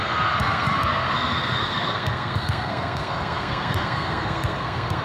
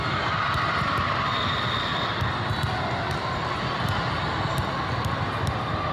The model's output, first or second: first